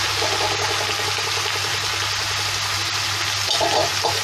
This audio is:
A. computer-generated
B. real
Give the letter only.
B